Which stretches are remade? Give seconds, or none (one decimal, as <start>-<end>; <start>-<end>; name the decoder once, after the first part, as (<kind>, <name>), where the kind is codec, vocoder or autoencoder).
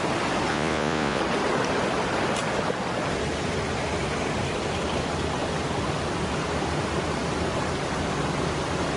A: 0.5-1.2 (vocoder, Vocos)